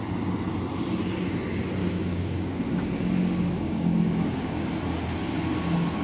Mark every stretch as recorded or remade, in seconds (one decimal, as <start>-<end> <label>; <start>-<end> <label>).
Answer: 0.0-1.8 recorded; 1.8-4.7 remade; 4.7-6.0 recorded